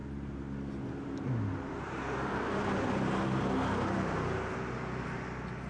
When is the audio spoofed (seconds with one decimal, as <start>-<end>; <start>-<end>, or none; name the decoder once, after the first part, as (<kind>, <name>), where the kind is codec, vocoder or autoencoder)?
none

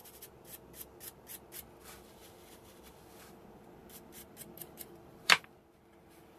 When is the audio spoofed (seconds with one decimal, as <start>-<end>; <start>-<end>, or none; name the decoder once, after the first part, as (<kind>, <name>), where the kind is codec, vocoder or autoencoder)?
1.8-6.4 (vocoder, BigVGAN v2)

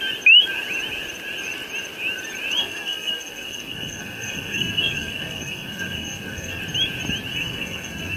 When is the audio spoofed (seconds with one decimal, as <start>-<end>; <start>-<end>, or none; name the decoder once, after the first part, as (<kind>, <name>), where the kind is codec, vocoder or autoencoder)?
2.6-6.6 (codec, SNAC); 7.3-8.2

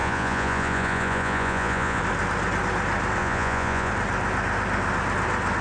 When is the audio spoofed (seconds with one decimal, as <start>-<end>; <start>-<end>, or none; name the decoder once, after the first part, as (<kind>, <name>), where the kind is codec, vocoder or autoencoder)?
0.0-2.0 (vocoder, Vocos); 3.2-3.9

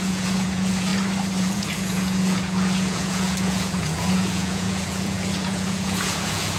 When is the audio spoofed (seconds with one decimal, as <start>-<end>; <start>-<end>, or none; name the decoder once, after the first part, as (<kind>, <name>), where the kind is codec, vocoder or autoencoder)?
0.0-0.9 (vocoder, Vocos); 1.4-6.6

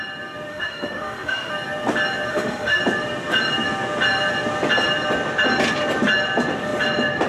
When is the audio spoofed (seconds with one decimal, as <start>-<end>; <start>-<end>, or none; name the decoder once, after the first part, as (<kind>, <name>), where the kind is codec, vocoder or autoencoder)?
0.5-1.5 (autoencoder, DAC-VAE); 2.3-2.8

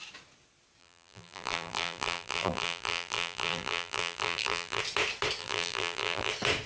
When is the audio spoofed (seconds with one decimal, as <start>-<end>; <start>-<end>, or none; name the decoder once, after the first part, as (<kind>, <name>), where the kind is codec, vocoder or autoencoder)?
0.8-4.8 (vocoder, BigVGAN v2); 5.4-6.3

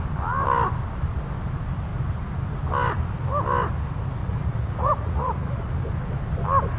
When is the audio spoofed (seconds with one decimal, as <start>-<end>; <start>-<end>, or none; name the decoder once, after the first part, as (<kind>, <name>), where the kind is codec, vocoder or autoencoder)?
4.2-5.6 (vocoder, Vocos)